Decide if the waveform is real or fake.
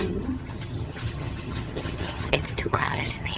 fake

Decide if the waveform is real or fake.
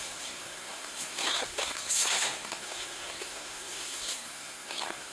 fake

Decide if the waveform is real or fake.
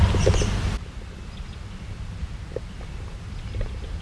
real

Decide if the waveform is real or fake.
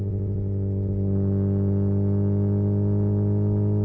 real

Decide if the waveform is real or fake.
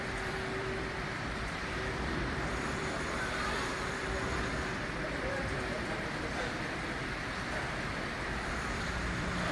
fake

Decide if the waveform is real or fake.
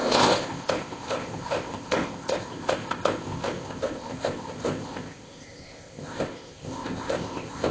fake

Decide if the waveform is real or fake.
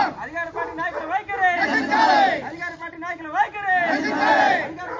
real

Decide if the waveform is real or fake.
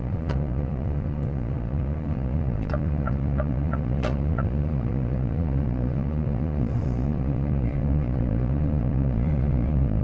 fake